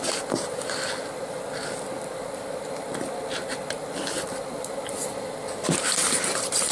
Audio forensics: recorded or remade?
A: recorded